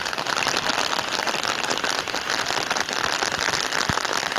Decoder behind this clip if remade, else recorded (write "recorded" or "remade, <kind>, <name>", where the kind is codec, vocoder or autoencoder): recorded